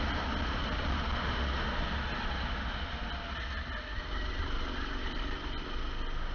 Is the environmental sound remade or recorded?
recorded